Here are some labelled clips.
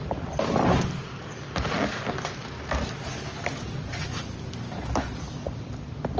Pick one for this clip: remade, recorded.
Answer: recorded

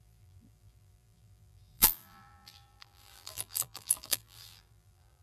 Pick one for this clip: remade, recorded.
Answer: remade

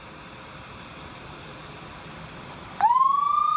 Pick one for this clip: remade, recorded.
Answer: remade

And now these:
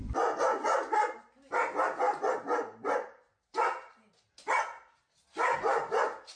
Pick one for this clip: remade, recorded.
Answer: recorded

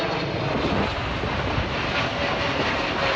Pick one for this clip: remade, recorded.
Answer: recorded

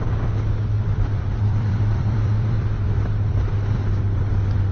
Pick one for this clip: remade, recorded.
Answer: remade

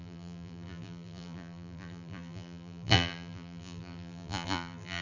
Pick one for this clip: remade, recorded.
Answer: remade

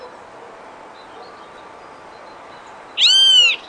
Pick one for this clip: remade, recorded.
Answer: recorded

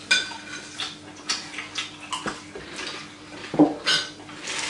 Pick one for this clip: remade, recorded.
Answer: recorded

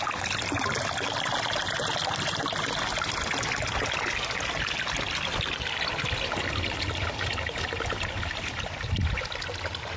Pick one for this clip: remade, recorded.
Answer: recorded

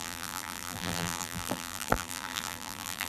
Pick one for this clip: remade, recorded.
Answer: remade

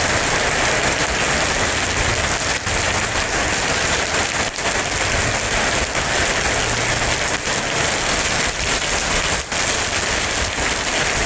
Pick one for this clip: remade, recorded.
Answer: recorded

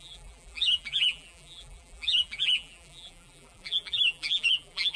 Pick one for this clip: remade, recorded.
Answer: remade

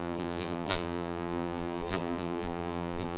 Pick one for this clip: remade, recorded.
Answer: remade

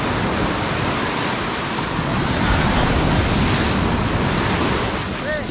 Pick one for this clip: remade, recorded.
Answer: recorded